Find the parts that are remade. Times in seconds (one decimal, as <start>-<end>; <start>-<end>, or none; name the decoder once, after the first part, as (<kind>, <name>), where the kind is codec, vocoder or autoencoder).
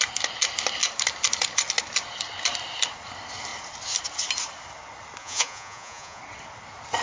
5.2-6.2 (vocoder, Vocos)